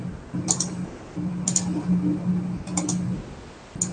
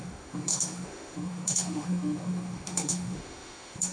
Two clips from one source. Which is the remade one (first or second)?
second